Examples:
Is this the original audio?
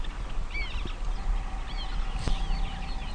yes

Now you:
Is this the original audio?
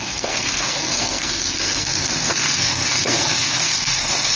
no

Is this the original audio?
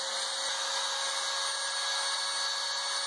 yes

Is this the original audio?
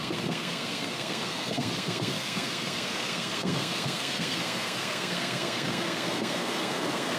no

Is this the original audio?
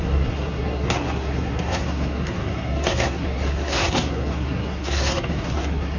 no